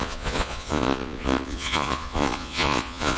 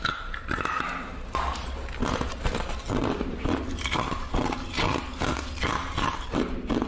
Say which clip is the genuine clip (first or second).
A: second